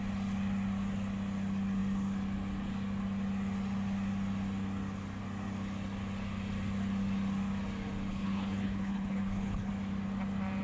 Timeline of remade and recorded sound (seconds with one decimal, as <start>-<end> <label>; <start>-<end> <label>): 0.0-8.1 recorded; 8.1-9.7 remade; 9.7-10.6 recorded